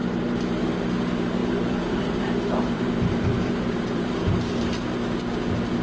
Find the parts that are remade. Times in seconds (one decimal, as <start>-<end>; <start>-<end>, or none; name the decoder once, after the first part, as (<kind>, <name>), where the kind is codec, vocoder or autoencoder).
1.4-4.9 (vocoder, BigVGAN v2)